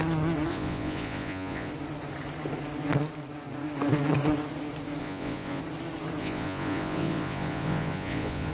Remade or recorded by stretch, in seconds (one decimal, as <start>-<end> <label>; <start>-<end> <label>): 0.0-0.5 recorded; 0.5-1.7 remade; 1.7-5.0 recorded; 5.0-5.6 remade; 5.6-6.2 recorded; 6.2-8.5 remade

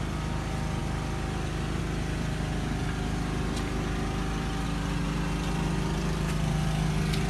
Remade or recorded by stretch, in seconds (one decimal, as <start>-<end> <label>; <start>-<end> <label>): 0.0-7.3 recorded

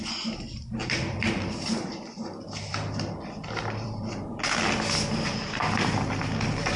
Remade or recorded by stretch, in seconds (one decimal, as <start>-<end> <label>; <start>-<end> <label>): 0.0-0.8 recorded; 0.8-4.4 remade; 4.4-6.8 recorded

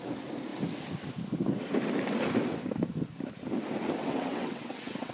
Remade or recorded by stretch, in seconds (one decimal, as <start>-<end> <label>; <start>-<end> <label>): 0.0-4.0 recorded; 4.0-5.1 remade

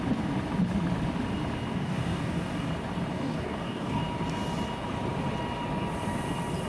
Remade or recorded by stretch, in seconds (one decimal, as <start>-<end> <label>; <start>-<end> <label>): 0.0-1.7 recorded; 1.7-2.7 remade; 2.7-3.1 recorded; 3.1-4.0 remade; 4.0-6.7 recorded

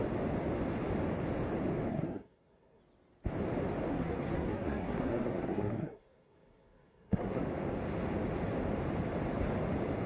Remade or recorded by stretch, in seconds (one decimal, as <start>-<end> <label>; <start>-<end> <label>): 0.0-1.9 recorded; 1.9-2.8 remade; 2.8-3.9 recorded; 3.9-7.4 remade; 7.4-10.1 recorded

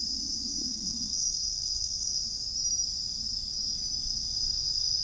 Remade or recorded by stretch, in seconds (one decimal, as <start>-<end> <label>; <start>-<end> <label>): 0.0-0.6 recorded; 0.6-2.2 remade; 2.2-5.0 recorded